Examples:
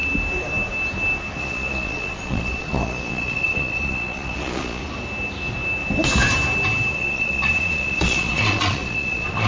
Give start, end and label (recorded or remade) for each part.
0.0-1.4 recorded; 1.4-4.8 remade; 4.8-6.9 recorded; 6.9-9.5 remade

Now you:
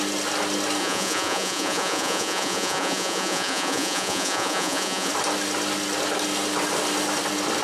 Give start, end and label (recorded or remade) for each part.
0.0-0.8 recorded; 0.8-5.1 remade; 5.1-7.6 recorded

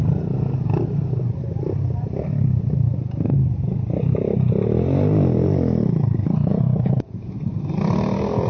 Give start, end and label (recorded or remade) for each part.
0.0-6.5 recorded; 6.5-7.6 remade; 7.6-8.5 recorded

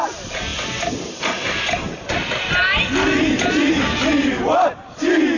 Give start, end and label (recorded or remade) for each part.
0.0-5.4 recorded

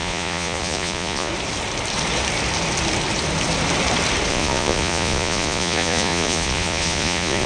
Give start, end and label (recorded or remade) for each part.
0.0-1.3 remade; 1.3-4.3 recorded; 4.3-7.5 remade